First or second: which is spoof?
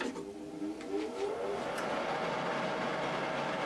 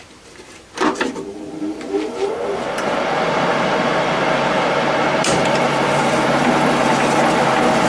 second